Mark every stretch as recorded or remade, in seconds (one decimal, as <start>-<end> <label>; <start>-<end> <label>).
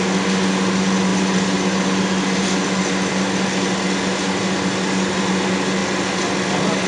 0.0-6.9 recorded